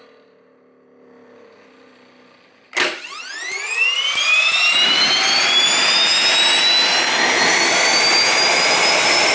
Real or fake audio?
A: real